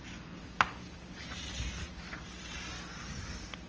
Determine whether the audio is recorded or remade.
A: recorded